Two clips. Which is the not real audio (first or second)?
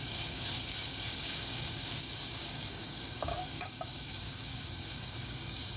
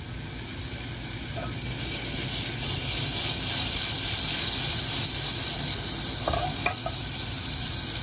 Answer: first